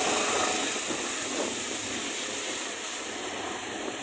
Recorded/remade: recorded